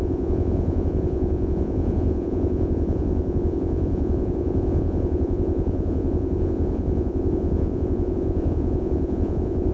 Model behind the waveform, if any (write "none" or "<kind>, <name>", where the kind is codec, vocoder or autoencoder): vocoder, Vocos